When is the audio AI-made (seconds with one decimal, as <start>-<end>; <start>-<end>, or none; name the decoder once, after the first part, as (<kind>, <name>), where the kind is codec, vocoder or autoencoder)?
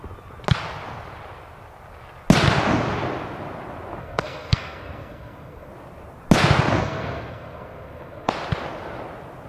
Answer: 4.0-5.7 (codec, SNAC); 6.8-8.3